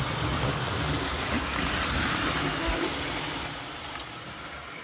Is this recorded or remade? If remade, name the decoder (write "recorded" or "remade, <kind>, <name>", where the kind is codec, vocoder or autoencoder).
recorded